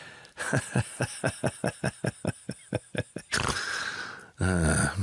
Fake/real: real